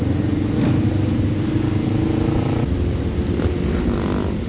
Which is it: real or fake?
real